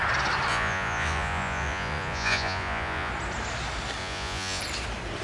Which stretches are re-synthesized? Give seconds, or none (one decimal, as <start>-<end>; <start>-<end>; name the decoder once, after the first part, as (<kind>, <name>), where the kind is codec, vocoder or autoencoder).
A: 0.5-3.1 (vocoder, Vocos); 4.0-4.6